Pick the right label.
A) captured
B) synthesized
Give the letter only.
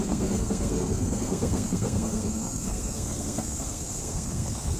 B